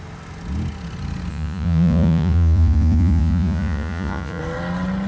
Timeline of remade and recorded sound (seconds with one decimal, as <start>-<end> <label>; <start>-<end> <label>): 0.0-1.3 recorded; 1.3-4.4 remade; 4.4-5.1 recorded